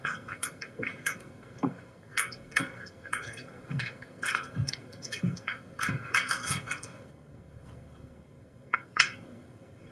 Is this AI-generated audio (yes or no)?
yes